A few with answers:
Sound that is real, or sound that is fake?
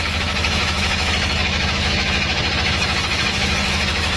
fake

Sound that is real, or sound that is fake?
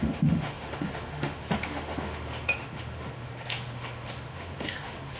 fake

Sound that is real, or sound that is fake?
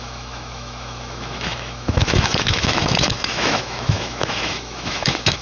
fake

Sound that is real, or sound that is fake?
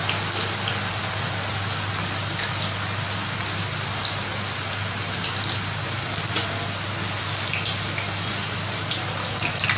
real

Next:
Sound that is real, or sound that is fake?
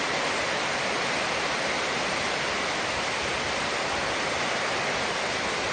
real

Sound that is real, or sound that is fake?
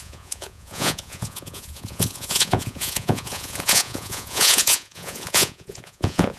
fake